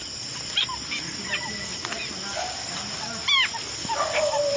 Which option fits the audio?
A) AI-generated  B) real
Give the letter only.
B